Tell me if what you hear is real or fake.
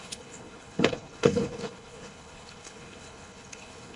fake